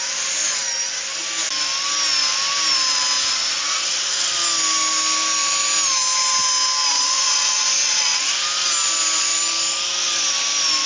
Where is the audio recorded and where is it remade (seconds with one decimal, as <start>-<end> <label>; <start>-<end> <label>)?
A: 0.0-3.3 recorded; 3.3-4.3 remade; 4.3-6.9 recorded; 6.9-8.3 remade; 8.3-10.9 recorded